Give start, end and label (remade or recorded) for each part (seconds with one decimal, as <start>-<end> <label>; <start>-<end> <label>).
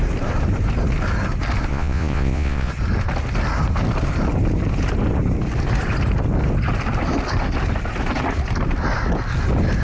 0.0-1.7 recorded; 1.7-2.7 remade; 2.7-9.8 recorded